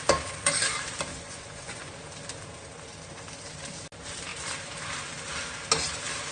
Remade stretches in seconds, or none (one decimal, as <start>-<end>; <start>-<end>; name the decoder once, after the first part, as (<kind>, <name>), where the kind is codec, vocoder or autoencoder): 1.1-1.9 (vocoder, Vocos)